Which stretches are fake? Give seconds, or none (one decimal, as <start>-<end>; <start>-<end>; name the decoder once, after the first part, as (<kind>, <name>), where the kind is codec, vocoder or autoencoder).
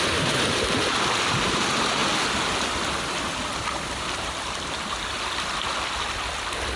none